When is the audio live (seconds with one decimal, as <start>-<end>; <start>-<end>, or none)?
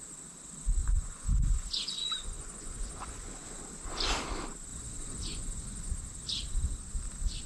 0.0-0.8; 3.6-4.7; 5.9-7.5